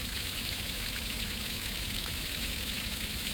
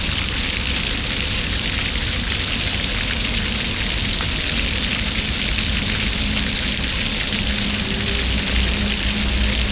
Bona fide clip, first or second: second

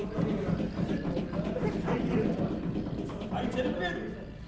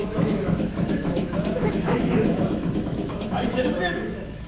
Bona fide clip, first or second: first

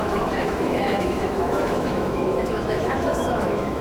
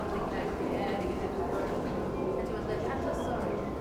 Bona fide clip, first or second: second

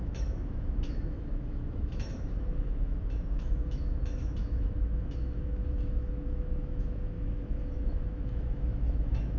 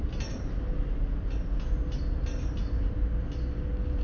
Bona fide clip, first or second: second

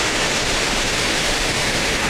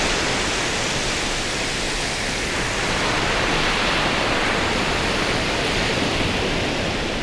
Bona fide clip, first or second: second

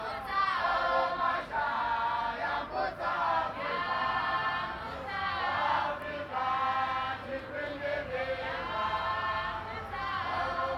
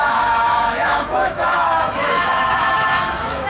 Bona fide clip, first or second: first